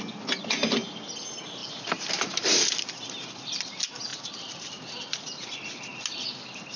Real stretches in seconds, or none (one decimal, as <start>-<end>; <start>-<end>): 0.0-1.6; 3.1-4.1; 4.8-6.8